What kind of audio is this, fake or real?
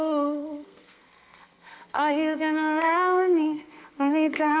fake